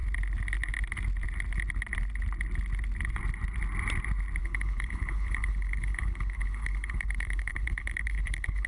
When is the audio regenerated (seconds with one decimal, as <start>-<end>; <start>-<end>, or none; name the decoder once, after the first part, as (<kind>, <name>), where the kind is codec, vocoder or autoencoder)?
4.4-8.7 (codec, HILCodec)